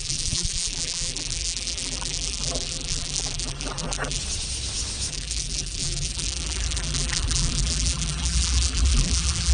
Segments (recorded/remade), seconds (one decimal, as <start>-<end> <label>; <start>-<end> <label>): 0.0-4.2 remade; 4.2-5.1 recorded; 5.1-9.5 remade